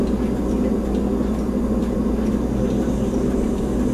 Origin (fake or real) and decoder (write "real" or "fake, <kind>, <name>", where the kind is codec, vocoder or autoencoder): real